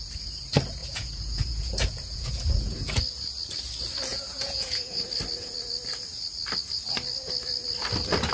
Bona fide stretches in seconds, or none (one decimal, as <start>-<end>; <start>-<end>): 0.0-0.8; 3.0-4.1; 5.0-8.3

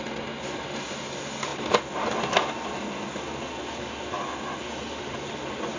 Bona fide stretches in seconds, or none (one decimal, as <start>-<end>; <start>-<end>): 0.0-5.8

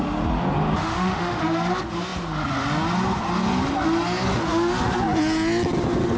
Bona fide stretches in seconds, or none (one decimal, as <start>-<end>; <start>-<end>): 0.0-0.8; 1.4-6.2

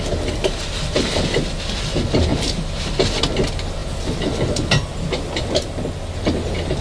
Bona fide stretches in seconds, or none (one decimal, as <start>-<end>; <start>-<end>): 0.0-6.8